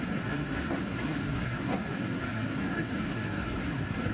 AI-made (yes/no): yes